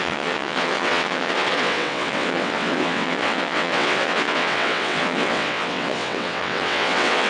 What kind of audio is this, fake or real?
fake